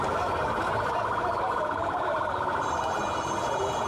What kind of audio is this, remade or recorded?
recorded